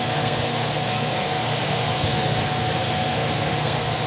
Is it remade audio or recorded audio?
remade